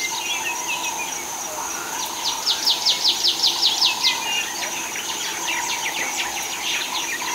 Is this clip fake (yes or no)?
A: no